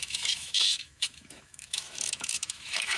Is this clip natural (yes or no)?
no